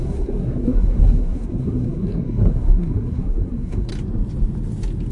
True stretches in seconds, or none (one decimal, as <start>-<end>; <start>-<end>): 3.9-5.1